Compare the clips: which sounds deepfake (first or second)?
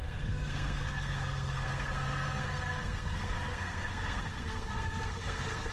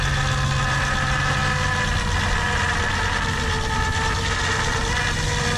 first